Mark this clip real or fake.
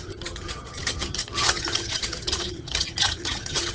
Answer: fake